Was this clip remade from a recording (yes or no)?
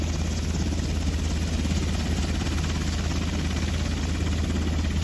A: no